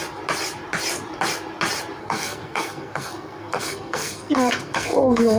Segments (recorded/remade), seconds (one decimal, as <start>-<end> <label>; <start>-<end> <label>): 0.0-2.0 recorded; 2.0-5.4 remade